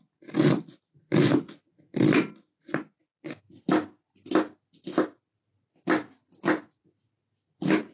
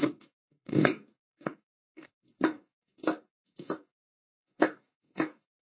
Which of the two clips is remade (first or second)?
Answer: second